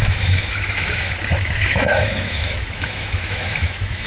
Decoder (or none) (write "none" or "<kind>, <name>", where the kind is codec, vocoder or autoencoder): autoencoder, DAC-VAE